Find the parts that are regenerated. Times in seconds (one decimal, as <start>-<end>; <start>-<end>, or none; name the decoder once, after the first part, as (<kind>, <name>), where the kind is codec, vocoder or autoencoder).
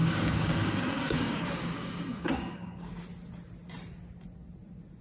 0.0-3.0 (codec, DAC)